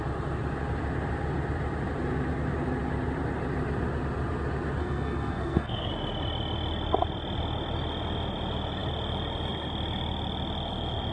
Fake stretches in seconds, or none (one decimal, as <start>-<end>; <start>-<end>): 4.8-5.9